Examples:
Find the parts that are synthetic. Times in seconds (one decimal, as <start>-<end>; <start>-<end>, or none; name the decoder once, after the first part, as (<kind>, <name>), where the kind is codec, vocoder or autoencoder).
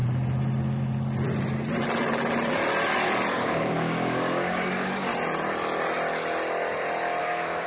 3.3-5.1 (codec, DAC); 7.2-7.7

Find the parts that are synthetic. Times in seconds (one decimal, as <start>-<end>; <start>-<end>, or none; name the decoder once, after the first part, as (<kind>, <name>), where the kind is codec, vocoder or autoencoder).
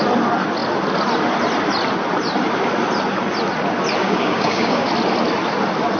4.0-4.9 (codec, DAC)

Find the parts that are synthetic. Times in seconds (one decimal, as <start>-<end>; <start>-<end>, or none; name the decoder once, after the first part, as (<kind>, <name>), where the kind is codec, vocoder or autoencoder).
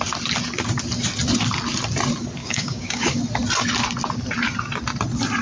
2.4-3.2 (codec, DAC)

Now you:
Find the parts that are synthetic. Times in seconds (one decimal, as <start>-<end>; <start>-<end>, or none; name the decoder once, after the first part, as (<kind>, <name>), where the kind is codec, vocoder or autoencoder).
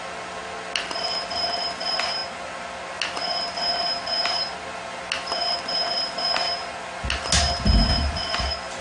none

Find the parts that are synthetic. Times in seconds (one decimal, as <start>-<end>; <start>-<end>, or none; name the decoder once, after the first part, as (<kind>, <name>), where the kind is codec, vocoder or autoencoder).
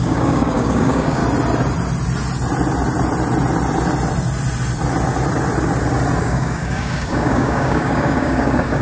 0.0-1.2 (codec, DAC); 6.2-8.8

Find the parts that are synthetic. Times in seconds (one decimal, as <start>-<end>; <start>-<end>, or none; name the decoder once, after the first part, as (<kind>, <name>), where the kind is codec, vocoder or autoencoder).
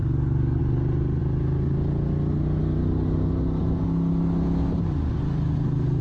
0.0-0.6 (codec, DAC)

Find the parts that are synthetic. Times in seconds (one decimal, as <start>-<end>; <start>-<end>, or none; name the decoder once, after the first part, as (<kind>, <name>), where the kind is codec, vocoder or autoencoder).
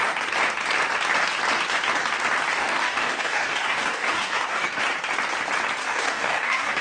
2.6-4.8 (codec, DAC); 5.8-6.8